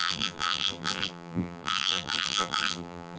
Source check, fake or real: fake